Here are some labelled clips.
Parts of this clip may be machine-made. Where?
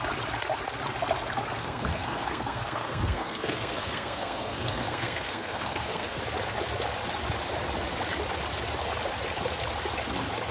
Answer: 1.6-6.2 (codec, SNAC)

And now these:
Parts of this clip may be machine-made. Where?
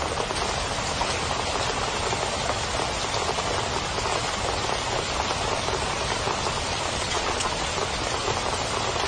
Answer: 6.7-7.5 (vocoder, Vocos)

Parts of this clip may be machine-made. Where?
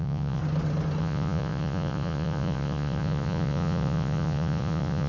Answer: 0.0-0.4 (vocoder, Vocos); 1.0-5.1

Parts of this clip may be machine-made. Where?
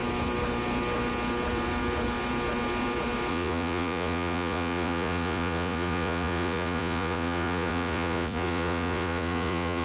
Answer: 3.3-9.8 (vocoder, Vocos)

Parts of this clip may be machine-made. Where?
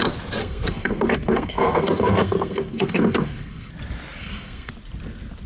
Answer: 0.4-3.7 (codec, SNAC); 4.2-4.7